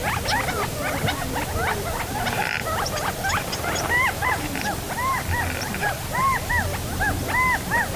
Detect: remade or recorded recorded